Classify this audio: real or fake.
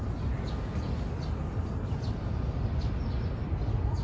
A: real